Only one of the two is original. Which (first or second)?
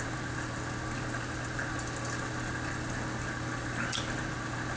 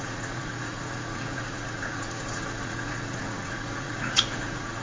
first